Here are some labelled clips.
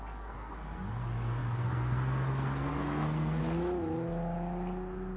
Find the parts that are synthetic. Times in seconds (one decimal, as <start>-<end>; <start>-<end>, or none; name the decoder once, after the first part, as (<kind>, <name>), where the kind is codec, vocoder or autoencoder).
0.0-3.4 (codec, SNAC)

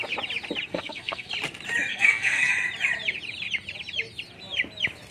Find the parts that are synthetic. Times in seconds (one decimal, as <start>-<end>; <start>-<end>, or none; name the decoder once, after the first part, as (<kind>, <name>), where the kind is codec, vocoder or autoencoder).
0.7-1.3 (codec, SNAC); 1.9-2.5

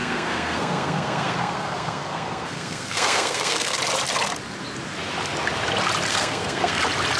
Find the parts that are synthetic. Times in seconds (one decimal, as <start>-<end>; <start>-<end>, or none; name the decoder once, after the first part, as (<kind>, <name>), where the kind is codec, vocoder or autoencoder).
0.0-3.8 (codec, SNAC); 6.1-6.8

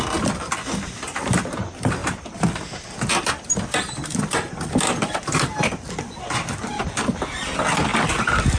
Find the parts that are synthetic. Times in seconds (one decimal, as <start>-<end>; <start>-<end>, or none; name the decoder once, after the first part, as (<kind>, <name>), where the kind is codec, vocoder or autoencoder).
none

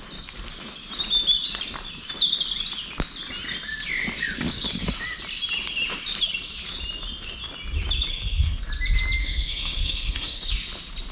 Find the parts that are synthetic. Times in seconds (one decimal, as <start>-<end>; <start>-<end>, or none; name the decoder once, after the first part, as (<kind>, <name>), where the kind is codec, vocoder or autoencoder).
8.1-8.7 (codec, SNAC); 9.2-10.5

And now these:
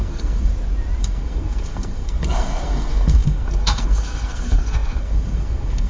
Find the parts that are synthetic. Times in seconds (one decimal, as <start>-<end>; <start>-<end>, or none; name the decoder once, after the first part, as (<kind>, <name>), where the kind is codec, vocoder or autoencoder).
0.0-0.5 (codec, SNAC); 1.0-5.9

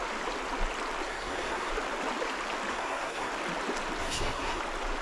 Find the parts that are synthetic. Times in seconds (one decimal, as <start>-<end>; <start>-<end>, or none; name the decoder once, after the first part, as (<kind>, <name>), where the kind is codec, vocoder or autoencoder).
1.1-1.7 (codec, SNAC); 2.7-3.3; 4.0-4.6